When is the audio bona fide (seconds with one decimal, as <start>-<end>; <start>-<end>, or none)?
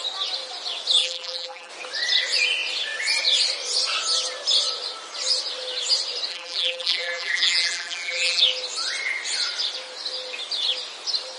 0.0-1.0; 1.7-6.3; 8.4-11.4